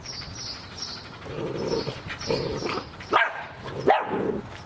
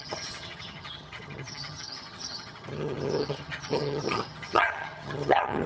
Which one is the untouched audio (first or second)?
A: first